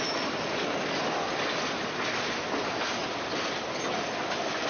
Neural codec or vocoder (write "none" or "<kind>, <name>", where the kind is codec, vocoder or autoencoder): none